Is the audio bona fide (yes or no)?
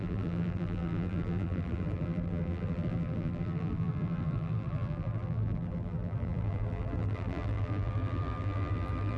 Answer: no